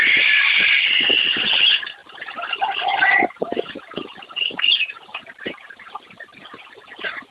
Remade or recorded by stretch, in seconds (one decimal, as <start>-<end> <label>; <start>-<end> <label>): 0.0-7.3 recorded

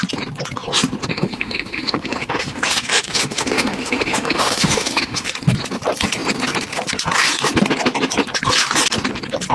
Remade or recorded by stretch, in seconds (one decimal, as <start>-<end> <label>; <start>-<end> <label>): 0.0-1.0 recorded; 1.0-5.3 remade; 5.3-9.5 recorded

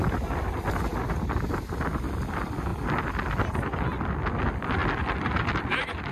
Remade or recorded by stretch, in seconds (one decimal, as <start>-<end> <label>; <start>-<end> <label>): 0.0-6.1 recorded

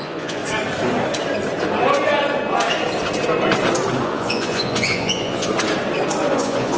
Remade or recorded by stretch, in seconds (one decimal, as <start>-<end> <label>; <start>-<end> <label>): 0.0-0.4 remade; 0.4-4.0 recorded; 4.0-5.5 remade; 5.5-6.3 recorded; 6.3-6.8 remade

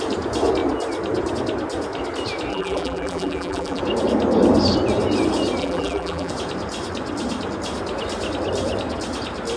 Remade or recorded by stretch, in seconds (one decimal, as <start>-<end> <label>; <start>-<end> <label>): 0.0-2.5 recorded; 2.5-3.8 remade; 3.8-5.6 recorded; 5.6-6.3 remade; 6.3-9.6 recorded

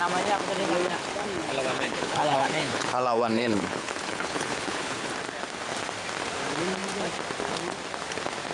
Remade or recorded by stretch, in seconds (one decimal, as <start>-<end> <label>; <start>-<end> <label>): 0.0-1.2 recorded; 1.2-5.1 remade; 5.1-8.5 recorded

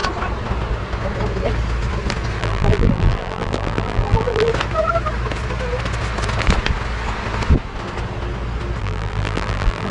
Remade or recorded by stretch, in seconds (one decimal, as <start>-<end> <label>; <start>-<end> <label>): 0.0-2.4 recorded; 2.4-4.5 remade; 4.5-8.8 recorded; 8.8-9.9 remade